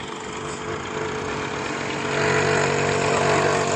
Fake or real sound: real